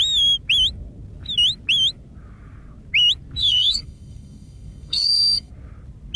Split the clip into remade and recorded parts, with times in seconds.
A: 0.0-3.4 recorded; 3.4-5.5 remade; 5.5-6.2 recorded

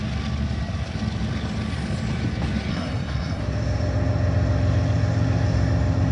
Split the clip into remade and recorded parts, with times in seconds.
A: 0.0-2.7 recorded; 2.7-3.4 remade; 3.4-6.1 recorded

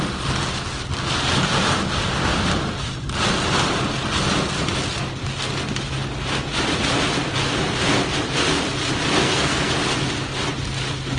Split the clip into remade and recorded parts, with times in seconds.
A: 0.0-9.2 recorded; 9.2-9.7 remade; 9.7-11.2 recorded